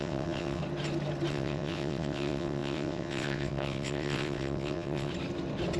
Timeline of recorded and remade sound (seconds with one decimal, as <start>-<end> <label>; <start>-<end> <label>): 0.0-0.6 remade; 0.6-1.3 recorded; 1.3-5.1 remade; 5.1-5.8 recorded